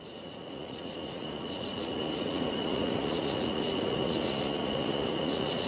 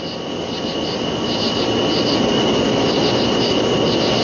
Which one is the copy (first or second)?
first